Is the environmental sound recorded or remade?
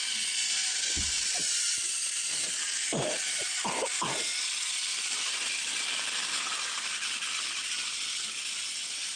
recorded